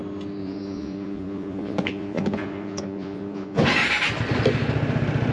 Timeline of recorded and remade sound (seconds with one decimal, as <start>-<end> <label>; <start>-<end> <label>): 0.0-0.4 recorded; 0.4-3.6 remade; 3.6-5.3 recorded